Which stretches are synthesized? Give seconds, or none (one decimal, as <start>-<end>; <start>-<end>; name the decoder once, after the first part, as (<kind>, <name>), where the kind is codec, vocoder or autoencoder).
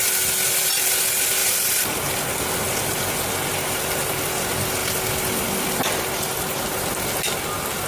none